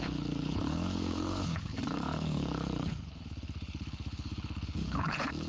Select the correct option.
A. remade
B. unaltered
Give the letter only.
A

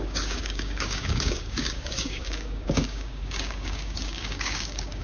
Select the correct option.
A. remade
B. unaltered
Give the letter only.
A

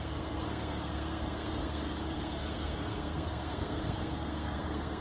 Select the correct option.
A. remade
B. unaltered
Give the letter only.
A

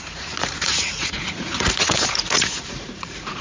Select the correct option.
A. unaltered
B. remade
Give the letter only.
B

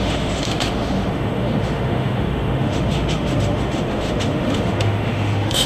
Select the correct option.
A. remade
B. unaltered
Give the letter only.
A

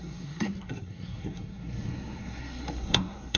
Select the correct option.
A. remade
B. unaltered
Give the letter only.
A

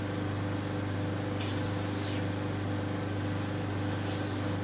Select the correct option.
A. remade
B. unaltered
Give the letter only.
B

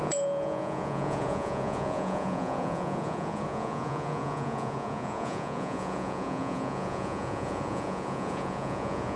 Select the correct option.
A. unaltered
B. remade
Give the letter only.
B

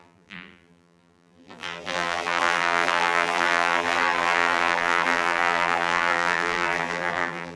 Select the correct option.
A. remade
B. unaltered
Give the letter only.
A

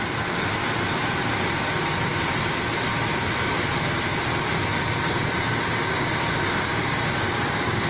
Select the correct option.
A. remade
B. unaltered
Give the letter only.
B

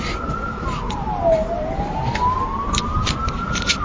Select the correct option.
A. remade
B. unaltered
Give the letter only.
B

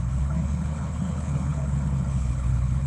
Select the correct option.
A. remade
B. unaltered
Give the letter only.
A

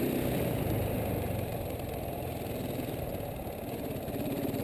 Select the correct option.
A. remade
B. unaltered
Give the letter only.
A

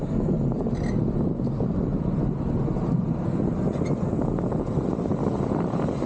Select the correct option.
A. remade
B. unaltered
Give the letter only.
B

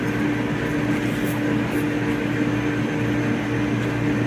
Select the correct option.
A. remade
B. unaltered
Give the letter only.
B